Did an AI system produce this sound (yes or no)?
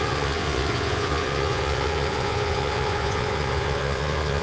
yes